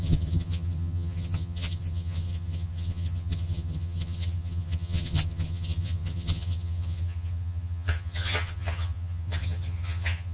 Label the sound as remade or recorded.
remade